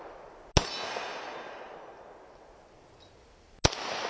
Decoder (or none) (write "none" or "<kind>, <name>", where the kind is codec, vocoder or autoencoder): none